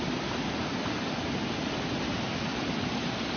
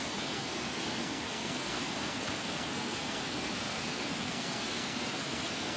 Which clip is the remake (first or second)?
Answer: second